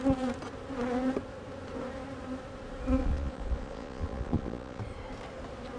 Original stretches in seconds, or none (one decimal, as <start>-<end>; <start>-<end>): 0.0-3.0; 4.8-5.8